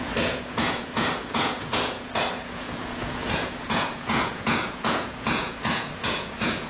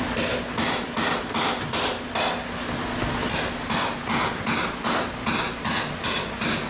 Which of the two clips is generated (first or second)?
first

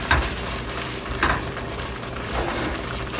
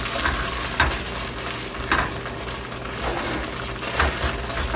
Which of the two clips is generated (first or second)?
first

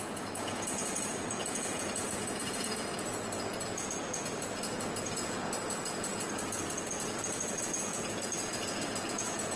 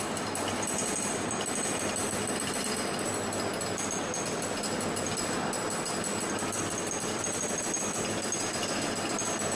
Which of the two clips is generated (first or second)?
first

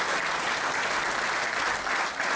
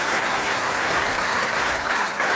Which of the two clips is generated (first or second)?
second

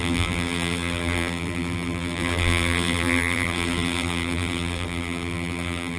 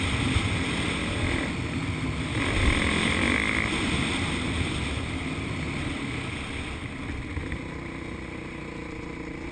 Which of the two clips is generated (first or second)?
first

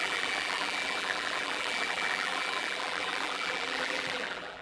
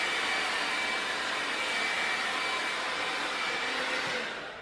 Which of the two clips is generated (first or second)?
first